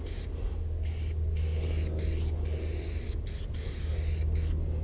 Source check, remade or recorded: recorded